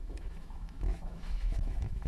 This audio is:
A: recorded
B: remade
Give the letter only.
B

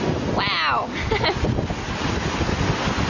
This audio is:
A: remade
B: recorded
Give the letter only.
B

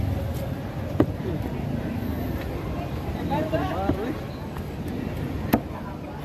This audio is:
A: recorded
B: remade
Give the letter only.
A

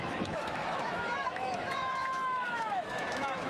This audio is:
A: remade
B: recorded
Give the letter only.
A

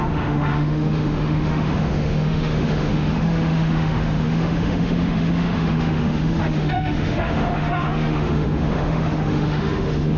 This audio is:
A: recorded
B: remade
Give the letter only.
B